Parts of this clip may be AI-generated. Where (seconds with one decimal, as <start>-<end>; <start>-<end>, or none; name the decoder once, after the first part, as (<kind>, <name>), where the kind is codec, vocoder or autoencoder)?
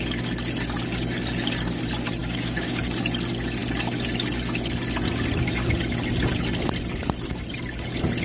2.2-2.8 (codec, DAC)